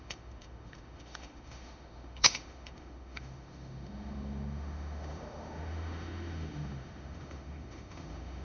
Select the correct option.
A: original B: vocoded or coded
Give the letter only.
B